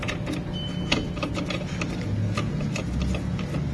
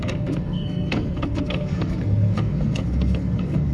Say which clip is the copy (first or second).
second